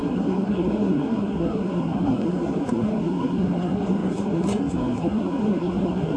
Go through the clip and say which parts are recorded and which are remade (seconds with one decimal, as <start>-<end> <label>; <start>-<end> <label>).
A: 0.0-6.2 remade